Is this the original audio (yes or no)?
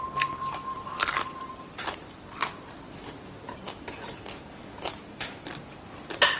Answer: yes